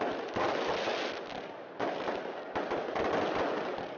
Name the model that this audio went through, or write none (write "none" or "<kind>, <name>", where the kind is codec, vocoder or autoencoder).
none